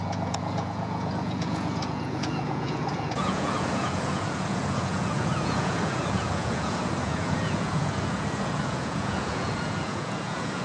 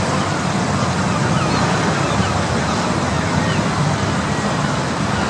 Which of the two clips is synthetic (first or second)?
first